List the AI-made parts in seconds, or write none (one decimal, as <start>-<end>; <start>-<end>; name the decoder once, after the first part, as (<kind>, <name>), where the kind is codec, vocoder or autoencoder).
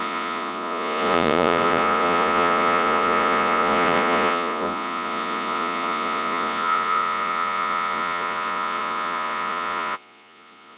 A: 0.0-10.8 (vocoder, Vocos)